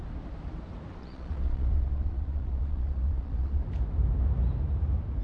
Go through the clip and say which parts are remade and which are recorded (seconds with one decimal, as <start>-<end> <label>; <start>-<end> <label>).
0.0-1.0 recorded; 1.0-3.6 remade; 3.6-5.2 recorded